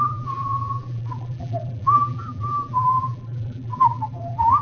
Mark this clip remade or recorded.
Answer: remade